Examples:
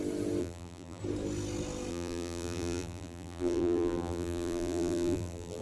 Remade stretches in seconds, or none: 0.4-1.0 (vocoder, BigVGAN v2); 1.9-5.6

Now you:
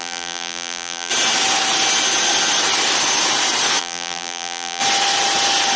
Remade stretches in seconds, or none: 0.0-1.1 (vocoder, BigVGAN v2); 3.8-4.8

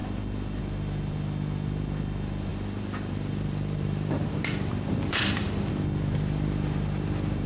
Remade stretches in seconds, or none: 0.0-0.6 (vocoder, BigVGAN v2); 2.5-5.7